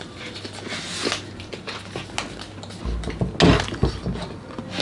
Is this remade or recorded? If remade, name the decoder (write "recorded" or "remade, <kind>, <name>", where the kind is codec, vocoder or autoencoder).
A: recorded